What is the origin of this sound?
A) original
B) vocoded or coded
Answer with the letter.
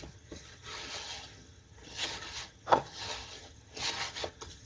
B